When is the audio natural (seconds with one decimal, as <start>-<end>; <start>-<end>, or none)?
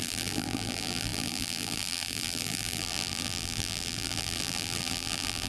none